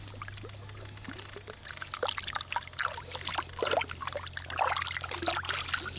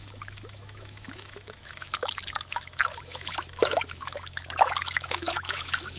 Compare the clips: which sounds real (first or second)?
first